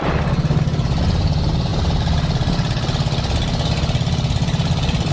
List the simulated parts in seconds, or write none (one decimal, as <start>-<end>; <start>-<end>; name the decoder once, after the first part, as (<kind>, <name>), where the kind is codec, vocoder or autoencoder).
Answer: none